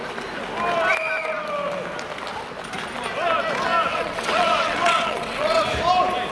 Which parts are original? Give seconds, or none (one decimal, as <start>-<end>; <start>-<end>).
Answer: 0.0-3.9; 5.6-6.3